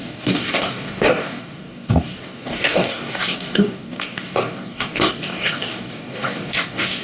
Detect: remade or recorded remade